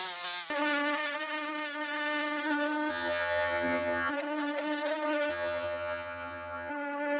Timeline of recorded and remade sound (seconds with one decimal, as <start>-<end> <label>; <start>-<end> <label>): 0.0-2.9 recorded; 2.9-4.1 remade; 4.1-5.3 recorded; 5.3-6.7 remade; 6.7-7.2 recorded